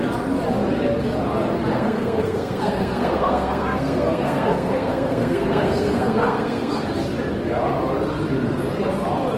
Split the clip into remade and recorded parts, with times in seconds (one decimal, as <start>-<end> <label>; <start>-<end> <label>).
0.0-1.7 recorded; 1.7-6.9 remade; 6.9-9.4 recorded